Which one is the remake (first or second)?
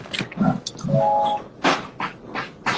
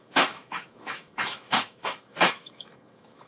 second